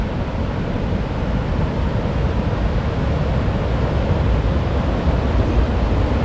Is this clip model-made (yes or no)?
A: no